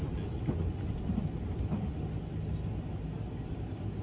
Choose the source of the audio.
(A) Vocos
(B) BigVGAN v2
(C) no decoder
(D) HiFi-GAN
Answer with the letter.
C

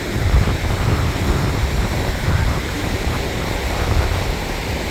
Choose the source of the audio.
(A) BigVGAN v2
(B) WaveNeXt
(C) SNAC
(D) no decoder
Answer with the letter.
A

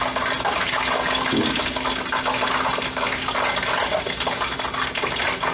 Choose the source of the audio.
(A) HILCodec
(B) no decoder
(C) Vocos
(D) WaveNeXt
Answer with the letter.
B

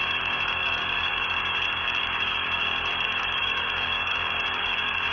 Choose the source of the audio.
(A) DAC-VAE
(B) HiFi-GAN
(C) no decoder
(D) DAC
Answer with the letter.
D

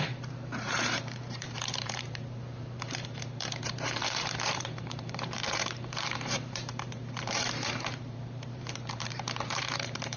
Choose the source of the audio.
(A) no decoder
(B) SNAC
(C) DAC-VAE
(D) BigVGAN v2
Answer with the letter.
D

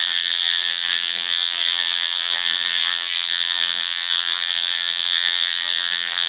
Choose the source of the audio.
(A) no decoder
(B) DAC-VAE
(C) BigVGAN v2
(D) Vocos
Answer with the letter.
C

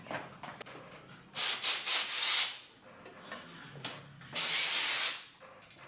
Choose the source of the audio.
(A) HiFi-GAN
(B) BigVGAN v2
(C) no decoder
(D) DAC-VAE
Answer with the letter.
C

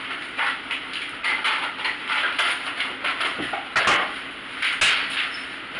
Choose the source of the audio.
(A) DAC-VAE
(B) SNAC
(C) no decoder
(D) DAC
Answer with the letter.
C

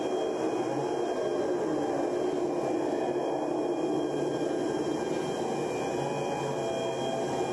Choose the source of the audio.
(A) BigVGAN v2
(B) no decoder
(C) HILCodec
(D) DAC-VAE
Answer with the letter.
B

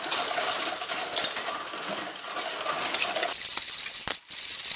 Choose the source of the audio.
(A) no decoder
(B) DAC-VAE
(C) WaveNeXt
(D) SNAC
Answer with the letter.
A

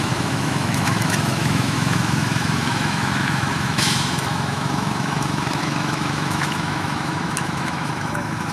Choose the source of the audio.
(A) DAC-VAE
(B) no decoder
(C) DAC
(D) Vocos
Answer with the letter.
A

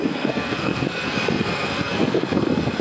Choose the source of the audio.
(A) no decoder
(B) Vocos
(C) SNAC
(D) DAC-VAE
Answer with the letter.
C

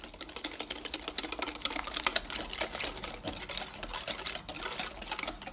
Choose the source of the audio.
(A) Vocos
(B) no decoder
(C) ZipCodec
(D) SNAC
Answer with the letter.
B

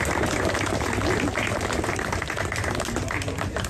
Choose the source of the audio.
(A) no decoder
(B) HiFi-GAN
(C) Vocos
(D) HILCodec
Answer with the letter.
A